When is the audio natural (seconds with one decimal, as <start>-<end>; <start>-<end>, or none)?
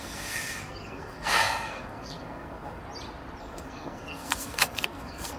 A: 2.8-3.4